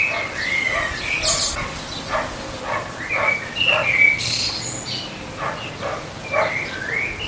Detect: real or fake real